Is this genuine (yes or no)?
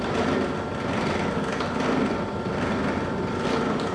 yes